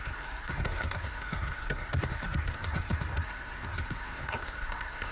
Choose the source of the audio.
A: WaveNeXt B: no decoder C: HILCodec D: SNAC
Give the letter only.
D